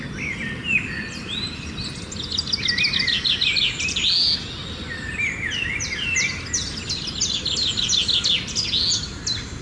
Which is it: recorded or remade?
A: recorded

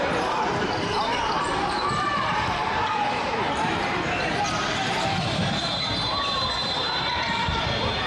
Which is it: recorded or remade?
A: remade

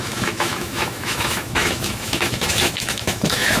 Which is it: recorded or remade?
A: remade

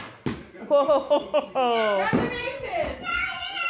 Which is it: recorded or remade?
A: recorded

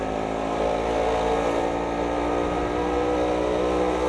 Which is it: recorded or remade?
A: recorded